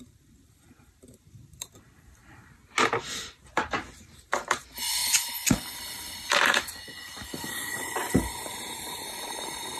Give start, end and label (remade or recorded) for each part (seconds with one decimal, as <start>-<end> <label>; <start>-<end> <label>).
0.0-2.2 remade; 2.2-2.8 recorded; 2.8-5.0 remade; 5.0-5.8 recorded; 5.8-9.8 remade

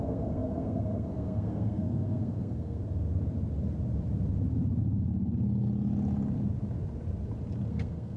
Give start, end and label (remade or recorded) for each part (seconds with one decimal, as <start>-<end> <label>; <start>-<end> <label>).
0.0-2.8 remade; 2.8-7.7 recorded; 7.7-8.2 remade

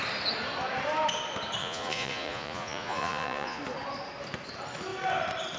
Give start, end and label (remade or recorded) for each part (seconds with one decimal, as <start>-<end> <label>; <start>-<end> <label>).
0.0-1.6 recorded; 1.6-3.6 remade; 3.6-5.6 recorded

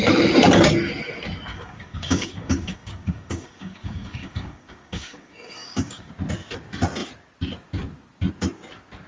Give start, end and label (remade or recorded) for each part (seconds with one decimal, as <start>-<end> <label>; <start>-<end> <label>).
0.0-1.5 recorded; 1.5-6.1 remade; 6.1-9.1 recorded